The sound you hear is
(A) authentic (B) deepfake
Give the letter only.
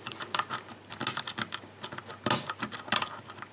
A